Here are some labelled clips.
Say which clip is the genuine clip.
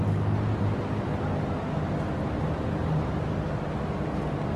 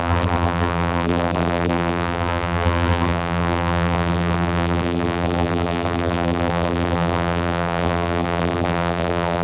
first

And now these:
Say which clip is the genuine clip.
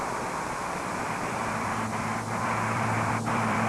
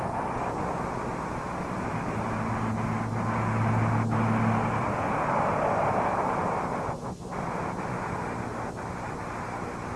second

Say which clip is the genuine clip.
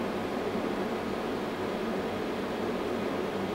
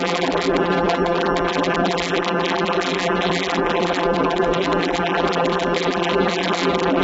first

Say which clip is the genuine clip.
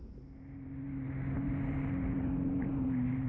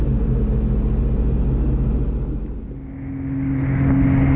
second